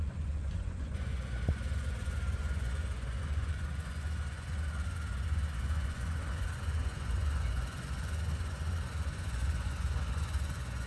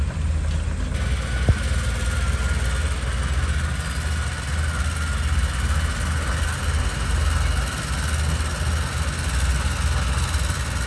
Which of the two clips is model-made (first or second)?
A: first